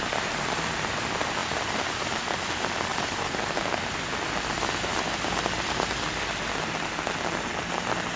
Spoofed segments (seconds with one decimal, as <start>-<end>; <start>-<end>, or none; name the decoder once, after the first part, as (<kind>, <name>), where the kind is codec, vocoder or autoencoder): 1.4-2.5 (vocoder, BigVGAN v2); 2.9-3.9; 4.9-5.6